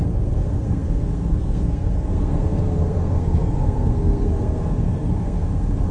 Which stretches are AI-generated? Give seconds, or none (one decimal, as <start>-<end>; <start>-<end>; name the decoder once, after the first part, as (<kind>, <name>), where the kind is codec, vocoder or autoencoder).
0.0-5.9 (codec, SNAC)